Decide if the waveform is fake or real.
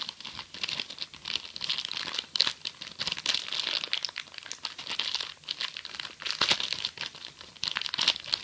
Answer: real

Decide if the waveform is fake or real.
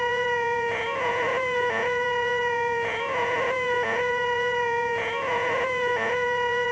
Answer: fake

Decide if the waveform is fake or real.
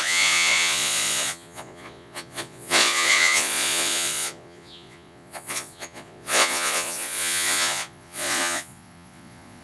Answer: fake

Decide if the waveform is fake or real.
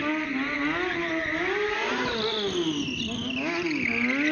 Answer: real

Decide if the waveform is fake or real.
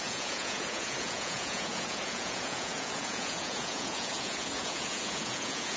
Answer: fake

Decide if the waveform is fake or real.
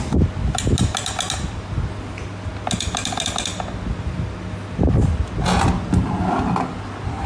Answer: real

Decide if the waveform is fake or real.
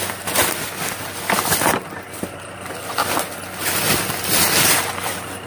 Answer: real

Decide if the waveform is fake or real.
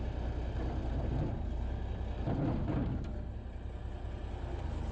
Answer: real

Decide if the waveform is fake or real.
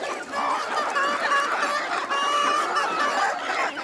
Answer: real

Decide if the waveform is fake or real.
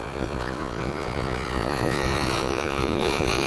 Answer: fake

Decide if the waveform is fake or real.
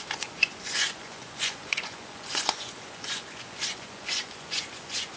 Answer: fake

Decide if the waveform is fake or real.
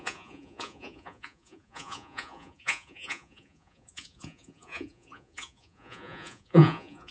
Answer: fake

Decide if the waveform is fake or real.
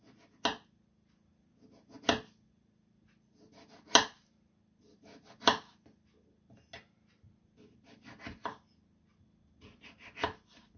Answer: real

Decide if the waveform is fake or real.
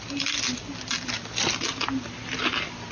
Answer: real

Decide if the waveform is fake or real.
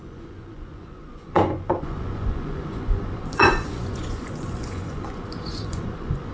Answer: fake